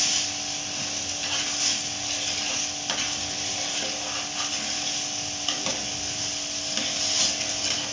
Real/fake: real